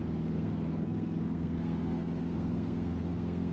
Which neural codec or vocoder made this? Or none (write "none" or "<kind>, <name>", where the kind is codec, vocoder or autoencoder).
codec, SNAC